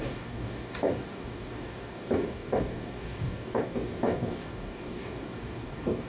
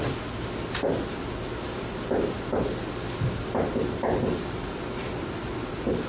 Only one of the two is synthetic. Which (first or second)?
first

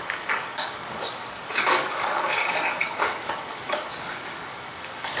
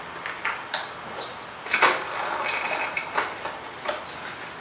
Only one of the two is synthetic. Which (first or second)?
first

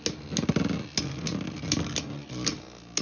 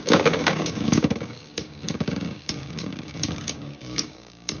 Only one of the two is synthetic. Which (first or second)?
second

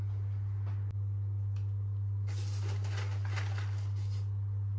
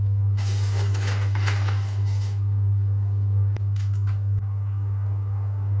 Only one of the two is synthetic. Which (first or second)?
second